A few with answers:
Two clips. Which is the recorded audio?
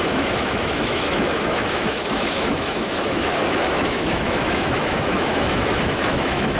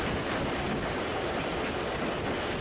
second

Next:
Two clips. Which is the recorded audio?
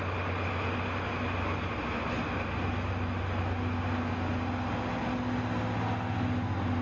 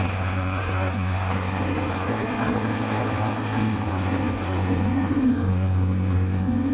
first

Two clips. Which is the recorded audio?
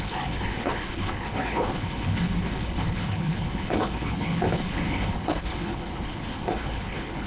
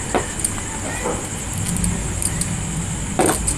second